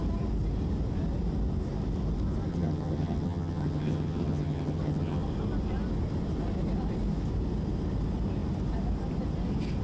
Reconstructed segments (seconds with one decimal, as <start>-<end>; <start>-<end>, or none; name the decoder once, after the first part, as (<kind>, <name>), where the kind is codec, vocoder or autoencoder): 2.5-5.2 (vocoder, HiFi-GAN)